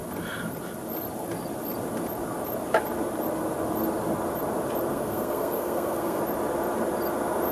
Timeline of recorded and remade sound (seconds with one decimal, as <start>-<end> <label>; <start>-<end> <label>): 0.0-4.9 recorded; 4.9-6.2 remade; 6.2-7.5 recorded